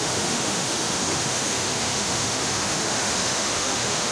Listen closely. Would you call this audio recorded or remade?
remade